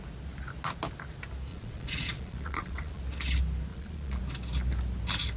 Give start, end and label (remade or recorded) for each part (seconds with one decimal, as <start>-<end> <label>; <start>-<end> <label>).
0.0-1.5 recorded; 1.5-3.0 remade; 3.0-3.7 recorded; 3.7-4.2 remade; 4.2-5.4 recorded